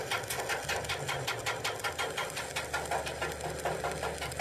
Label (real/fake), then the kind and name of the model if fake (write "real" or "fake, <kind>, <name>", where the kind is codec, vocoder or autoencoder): real